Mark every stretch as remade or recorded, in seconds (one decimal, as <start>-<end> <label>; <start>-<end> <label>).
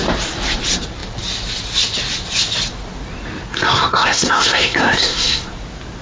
0.0-3.5 recorded; 3.5-5.4 remade; 5.4-6.0 recorded